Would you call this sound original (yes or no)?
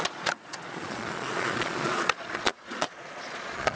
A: no